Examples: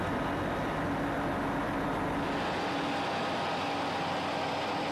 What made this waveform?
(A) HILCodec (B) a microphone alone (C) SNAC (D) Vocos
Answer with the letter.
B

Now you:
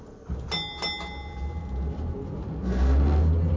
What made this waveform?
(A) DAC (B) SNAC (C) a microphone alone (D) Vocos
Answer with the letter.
C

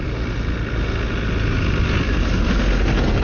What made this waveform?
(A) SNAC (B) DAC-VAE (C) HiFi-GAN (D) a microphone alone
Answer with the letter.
D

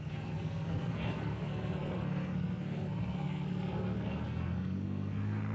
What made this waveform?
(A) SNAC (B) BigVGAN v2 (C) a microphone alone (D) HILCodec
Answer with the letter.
A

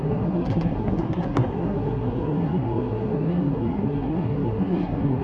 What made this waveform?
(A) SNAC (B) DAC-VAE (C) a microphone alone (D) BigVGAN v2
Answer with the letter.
A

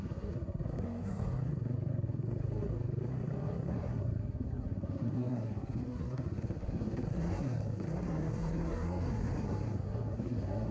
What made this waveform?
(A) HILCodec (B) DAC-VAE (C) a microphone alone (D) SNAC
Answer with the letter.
D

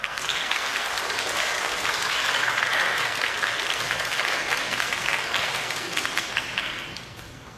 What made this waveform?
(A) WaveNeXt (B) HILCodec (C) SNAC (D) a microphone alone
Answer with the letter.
C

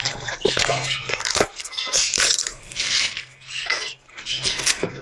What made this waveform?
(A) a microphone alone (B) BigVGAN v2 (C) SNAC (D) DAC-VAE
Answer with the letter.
C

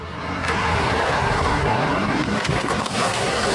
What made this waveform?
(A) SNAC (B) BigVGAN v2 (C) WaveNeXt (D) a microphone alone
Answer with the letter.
A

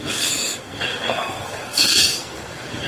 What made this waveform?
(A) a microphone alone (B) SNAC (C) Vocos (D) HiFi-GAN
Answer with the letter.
B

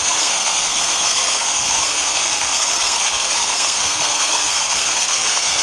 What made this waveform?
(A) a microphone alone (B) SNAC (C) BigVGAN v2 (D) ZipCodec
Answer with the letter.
B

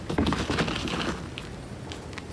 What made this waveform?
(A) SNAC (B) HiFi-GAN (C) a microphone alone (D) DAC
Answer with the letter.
C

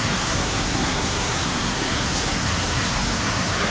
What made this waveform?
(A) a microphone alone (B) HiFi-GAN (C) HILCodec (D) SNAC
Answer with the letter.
D